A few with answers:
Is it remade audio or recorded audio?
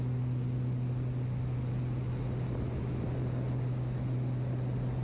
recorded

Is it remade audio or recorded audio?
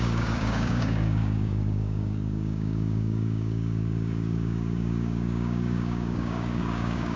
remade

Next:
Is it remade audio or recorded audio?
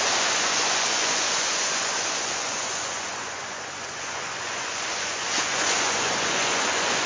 remade